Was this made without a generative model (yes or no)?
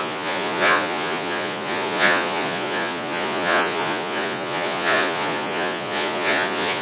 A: no